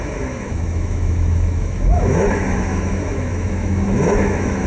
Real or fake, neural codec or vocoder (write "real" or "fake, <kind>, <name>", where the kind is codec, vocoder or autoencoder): fake, autoencoder, DAC-VAE